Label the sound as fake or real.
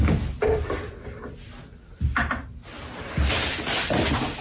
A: real